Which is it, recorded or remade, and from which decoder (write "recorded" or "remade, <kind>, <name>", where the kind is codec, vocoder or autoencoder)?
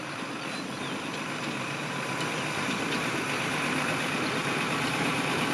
remade, vocoder, BigVGAN v2